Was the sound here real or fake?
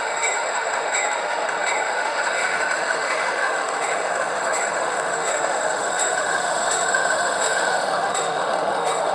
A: fake